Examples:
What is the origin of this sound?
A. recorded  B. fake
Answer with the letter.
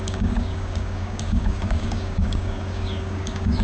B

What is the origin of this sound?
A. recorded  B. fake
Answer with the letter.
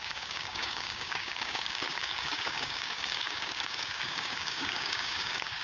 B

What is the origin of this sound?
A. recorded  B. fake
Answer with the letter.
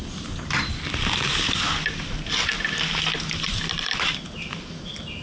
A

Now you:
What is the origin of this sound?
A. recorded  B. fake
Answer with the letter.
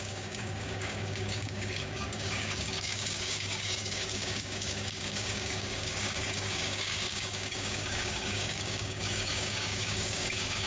B